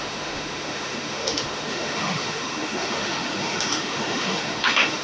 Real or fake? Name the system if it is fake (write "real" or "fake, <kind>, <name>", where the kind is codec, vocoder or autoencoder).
fake, autoencoder, DAC-VAE